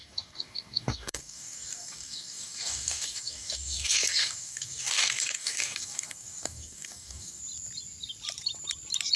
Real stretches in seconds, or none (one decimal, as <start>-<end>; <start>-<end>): 7.4-9.2